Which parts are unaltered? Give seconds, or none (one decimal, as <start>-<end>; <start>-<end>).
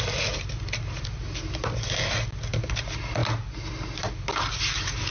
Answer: 0.0-5.1